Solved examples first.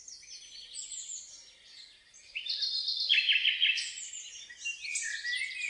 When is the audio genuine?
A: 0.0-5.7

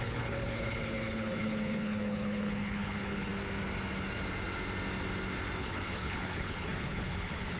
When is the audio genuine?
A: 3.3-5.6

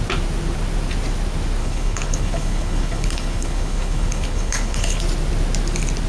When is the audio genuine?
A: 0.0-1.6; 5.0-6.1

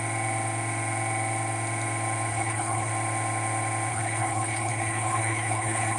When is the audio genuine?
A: 0.0-2.3; 2.9-3.9

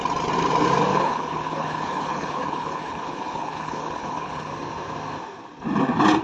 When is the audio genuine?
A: 0.0-0.9; 4.5-6.2